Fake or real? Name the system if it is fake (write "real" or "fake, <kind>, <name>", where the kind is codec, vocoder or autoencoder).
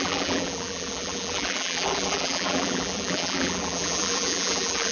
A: fake, vocoder, BigVGAN v2